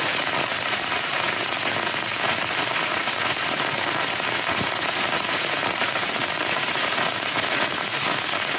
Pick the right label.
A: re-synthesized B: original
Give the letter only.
A